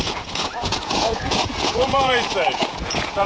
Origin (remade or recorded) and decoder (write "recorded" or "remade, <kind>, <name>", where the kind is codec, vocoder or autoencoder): remade, vocoder, Vocos